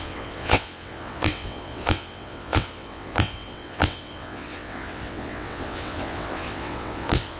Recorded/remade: remade